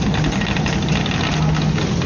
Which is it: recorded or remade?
recorded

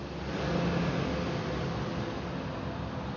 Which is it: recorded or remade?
recorded